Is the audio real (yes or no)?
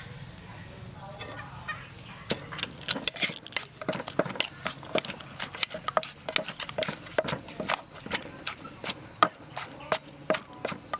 yes